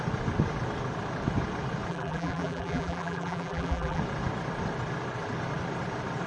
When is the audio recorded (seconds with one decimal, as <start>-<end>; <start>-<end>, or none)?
0.0-1.9; 4.0-6.3